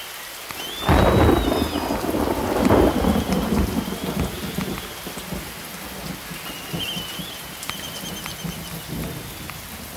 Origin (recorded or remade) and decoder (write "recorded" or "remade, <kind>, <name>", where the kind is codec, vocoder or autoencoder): recorded